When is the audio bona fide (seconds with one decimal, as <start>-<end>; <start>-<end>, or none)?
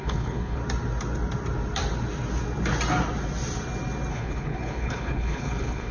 0.6-4.1